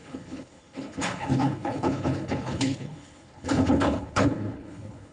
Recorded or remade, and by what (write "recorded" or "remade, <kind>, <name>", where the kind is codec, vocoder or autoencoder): remade, codec, HILCodec